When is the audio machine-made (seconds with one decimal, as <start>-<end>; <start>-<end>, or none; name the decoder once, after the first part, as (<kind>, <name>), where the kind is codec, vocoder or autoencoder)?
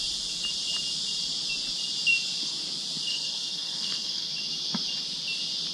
3.1-4.3 (codec, SNAC)